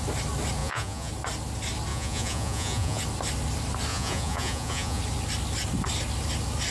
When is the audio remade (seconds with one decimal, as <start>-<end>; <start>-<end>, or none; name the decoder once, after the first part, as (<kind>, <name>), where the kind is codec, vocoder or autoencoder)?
0.6-1.1 (vocoder, Vocos); 1.9-3.0; 3.9-5.0